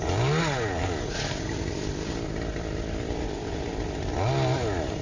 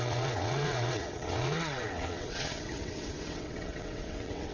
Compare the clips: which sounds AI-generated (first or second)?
second